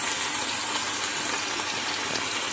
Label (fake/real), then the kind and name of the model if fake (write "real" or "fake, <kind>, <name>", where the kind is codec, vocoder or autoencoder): real